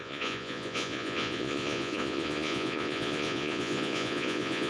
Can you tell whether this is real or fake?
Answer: fake